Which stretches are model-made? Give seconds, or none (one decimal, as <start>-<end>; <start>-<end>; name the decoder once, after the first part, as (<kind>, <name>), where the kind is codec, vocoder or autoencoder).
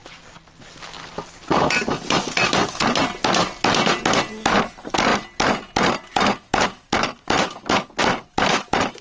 none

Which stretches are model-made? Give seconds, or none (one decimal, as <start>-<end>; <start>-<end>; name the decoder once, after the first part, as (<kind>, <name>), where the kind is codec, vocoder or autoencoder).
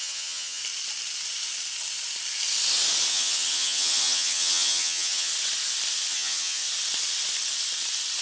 0.0-0.6 (vocoder, HiFi-GAN); 3.1-5.3; 6.1-6.6